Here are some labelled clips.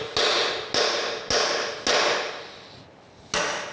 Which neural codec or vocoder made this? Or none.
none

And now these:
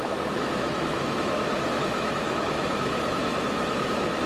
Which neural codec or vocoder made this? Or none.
autoencoder, DAC-VAE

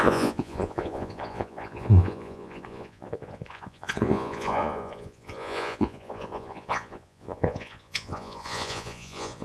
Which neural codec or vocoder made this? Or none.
vocoder, Vocos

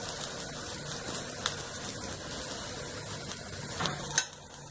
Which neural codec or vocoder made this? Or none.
none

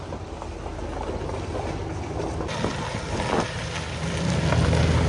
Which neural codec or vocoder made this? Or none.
none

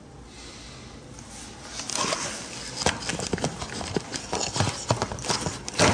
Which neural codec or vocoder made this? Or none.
none